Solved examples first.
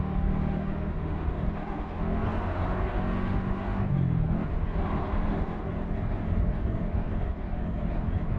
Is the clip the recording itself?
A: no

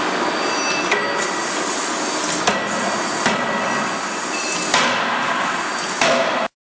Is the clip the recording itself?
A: yes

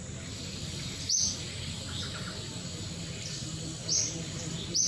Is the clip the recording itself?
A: yes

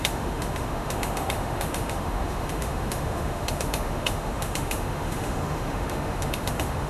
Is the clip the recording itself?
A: no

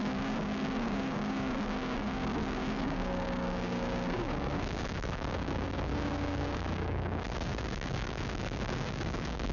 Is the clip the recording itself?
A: no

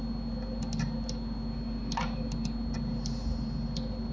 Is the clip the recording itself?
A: yes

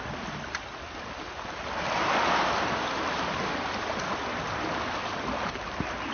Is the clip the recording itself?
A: yes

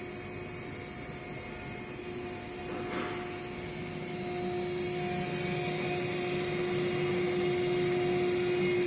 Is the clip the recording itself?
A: yes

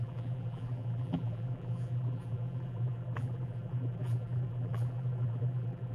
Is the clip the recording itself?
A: no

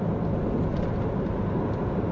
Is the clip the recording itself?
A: yes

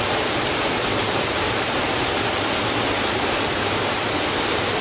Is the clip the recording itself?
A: yes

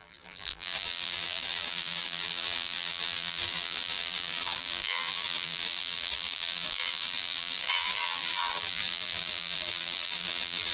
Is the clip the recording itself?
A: no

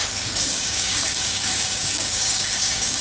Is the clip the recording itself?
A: no